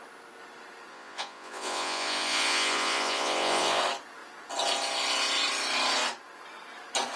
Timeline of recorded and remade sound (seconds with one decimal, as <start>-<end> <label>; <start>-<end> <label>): 0.0-0.9 recorded; 0.9-3.8 remade; 3.8-7.2 recorded